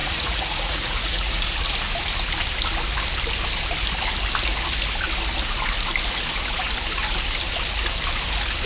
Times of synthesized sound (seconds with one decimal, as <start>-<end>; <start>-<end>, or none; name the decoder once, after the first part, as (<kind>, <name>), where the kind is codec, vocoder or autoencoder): 0.0-1.4 (vocoder, Vocos)